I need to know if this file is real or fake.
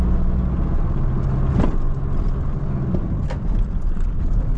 real